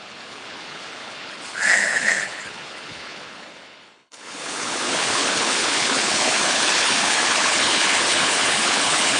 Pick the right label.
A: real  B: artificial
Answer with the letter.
B